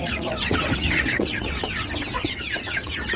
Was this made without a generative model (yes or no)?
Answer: no